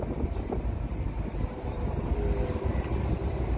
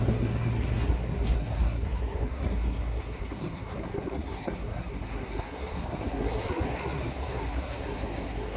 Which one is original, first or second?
first